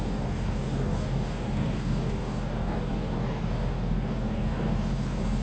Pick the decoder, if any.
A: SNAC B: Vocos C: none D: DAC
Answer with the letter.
D